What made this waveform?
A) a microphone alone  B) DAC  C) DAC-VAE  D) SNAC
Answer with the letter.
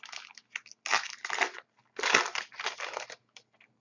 A